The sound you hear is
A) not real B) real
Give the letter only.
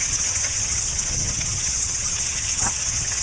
A